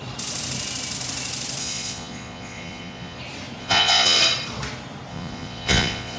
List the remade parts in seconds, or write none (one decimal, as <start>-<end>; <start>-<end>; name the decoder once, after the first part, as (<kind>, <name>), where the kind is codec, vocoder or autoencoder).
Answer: 1.6-3.2 (vocoder, Vocos); 3.6-4.2; 5.1-6.2